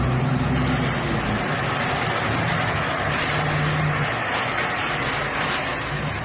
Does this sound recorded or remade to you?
recorded